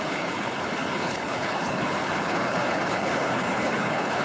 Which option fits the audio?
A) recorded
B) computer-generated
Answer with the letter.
B